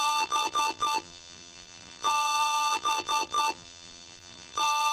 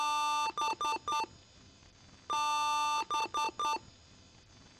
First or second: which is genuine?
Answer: second